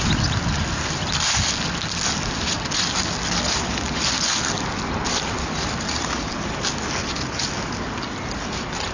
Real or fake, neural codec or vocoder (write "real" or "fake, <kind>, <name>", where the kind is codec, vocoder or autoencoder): real